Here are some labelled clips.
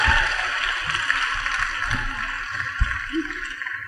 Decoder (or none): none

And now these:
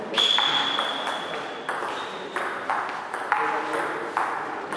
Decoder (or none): none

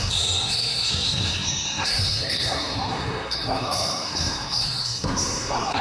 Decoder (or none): codec, SNAC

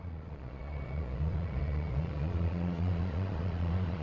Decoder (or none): vocoder, Vocos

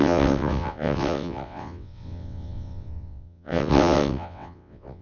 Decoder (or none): vocoder, WaveNeXt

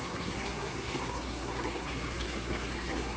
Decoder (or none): codec, SNAC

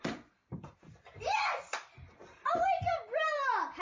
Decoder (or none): none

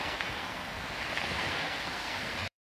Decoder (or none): codec, SNAC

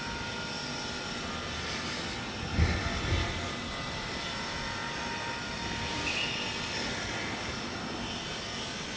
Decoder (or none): none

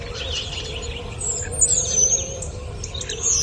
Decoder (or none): vocoder, BigVGAN v2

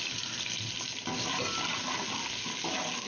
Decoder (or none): none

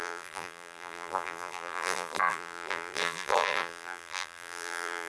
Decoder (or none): vocoder, BigVGAN v2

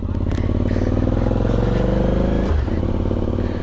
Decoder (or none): none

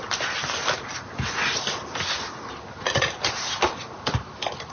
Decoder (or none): none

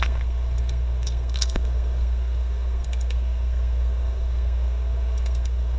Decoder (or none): codec, SNAC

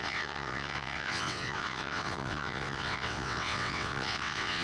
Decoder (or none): vocoder, WaveNeXt